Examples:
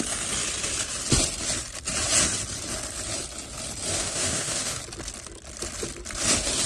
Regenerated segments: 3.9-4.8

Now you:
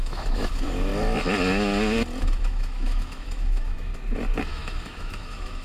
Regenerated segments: 0.0-0.9; 2.2-3.9; 4.4-5.6

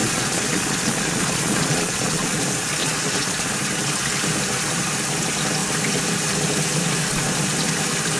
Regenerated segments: 0.0-2.4; 2.8-3.5

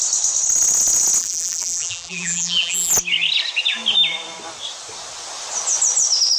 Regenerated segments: 1.2-2.9

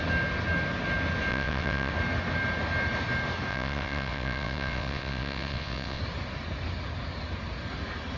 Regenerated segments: 1.3-1.9; 3.5-6.0

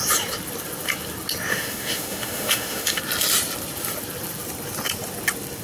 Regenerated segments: 1.5-3.0

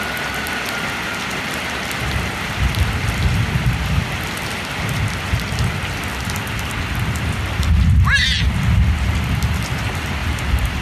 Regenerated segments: 10.2-10.8

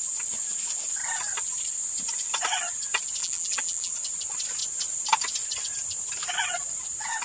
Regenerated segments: 3.2-3.9